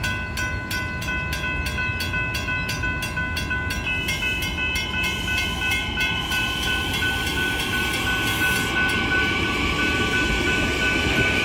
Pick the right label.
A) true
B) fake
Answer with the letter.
A